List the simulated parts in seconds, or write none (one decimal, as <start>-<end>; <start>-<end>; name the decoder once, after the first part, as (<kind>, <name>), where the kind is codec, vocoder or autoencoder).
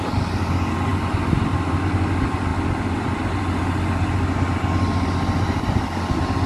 none